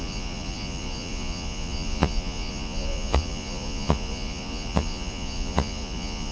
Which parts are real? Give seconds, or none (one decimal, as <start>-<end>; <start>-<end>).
none